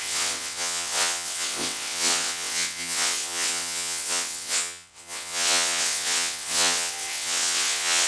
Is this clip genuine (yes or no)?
no